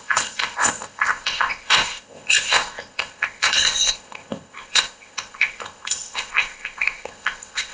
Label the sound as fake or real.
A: fake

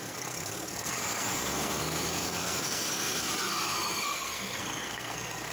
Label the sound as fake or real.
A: fake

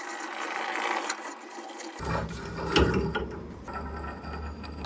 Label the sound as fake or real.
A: real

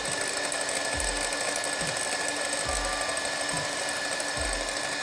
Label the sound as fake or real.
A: real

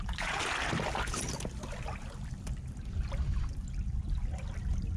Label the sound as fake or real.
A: real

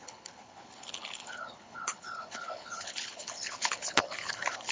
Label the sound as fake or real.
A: fake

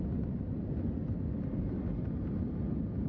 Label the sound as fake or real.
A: real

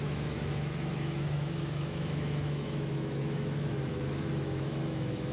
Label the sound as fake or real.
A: fake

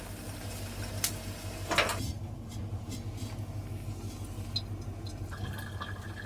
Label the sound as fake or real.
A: real